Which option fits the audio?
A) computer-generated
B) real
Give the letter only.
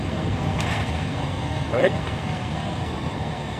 A